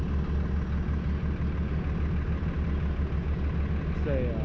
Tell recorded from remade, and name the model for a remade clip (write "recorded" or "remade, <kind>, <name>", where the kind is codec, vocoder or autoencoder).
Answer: recorded